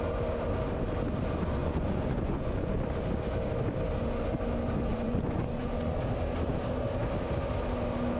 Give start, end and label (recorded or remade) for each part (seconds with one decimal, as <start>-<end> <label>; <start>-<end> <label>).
0.0-1.6 recorded; 1.6-2.8 remade; 2.8-4.9 recorded; 4.9-6.0 remade; 6.0-8.2 recorded

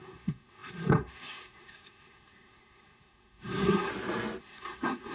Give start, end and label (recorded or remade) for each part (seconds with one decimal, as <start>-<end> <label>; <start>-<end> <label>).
0.0-3.9 remade; 3.9-4.4 recorded; 4.4-5.1 remade